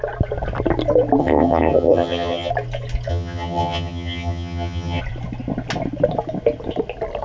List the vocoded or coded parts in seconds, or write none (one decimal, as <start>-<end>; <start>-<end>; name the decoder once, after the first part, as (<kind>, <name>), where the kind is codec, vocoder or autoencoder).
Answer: 1.2-2.5 (vocoder, HiFi-GAN); 3.1-5.0